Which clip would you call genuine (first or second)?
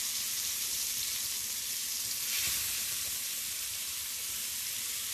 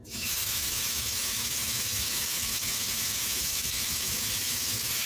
first